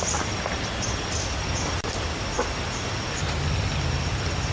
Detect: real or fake real